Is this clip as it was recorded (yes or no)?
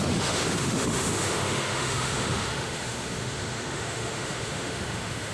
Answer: no